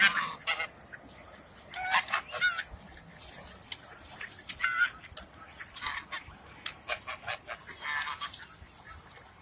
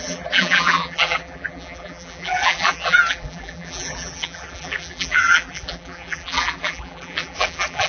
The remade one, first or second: second